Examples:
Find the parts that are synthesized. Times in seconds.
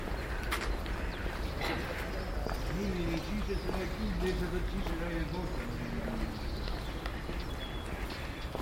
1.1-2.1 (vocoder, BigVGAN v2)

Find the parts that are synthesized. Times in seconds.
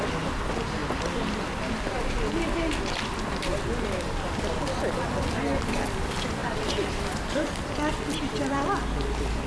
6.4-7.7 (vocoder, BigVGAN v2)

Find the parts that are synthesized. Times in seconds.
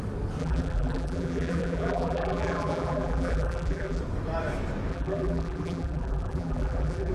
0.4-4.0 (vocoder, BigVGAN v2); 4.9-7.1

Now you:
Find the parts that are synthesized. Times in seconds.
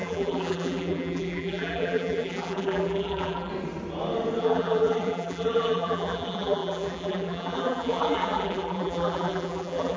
0.0-3.5 (vocoder, BigVGAN v2); 4.4-10.0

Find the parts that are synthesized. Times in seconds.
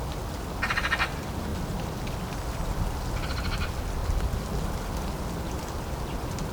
1.5-2.1 (vocoder, BigVGAN v2)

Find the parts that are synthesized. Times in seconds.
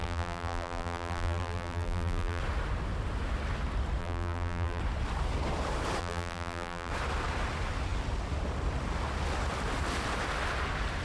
0.0-2.4 (vocoder, BigVGAN v2); 4.0-4.8; 6.0-6.9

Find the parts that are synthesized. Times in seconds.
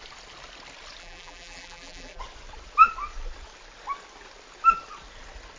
1.0-2.2 (vocoder, BigVGAN v2)